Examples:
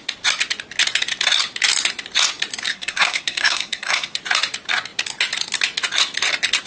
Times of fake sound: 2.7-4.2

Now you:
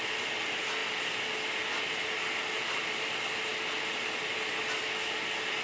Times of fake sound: none

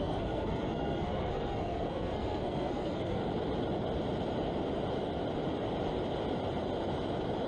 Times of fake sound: 0.0-3.2

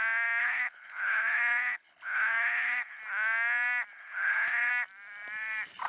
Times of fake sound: 0.4-3.0; 3.9-4.7

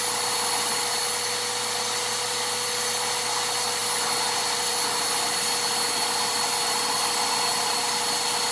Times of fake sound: none

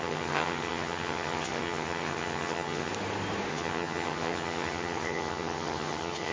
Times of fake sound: 0.0-2.9; 3.5-6.3

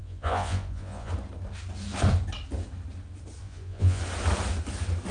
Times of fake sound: 0.0-1.1; 3.4-4.0

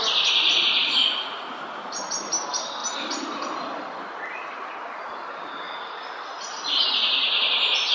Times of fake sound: none